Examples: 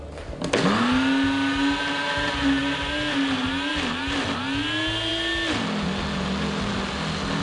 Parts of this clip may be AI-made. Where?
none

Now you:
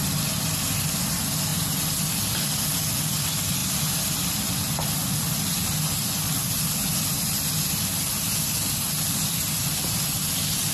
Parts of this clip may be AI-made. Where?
none

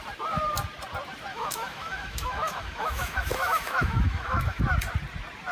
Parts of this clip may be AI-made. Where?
1.3-4.6

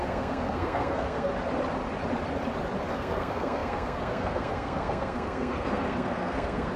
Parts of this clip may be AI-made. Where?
0.0-1.3; 2.9-6.8

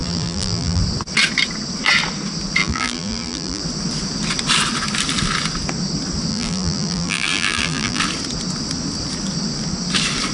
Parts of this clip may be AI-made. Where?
0.0-0.8; 2.6-3.6; 6.3-8.0